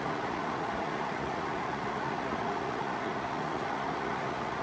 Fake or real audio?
fake